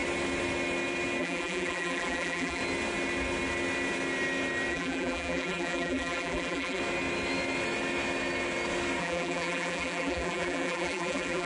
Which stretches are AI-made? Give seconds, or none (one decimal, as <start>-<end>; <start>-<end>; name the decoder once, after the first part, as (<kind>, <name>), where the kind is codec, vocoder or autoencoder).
1.2-2.6 (vocoder, BigVGAN v2); 4.7-6.8; 9.0-11.5